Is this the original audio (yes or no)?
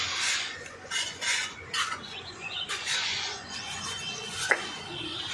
no